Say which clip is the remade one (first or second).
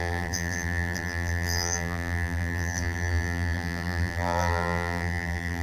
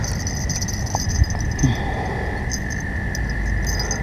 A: first